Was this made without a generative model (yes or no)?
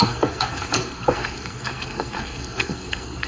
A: no